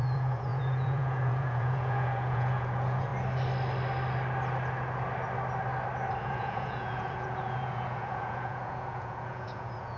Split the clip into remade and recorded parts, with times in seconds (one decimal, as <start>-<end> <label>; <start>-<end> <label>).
0.0-3.1 remade; 3.1-6.2 recorded; 6.2-10.0 remade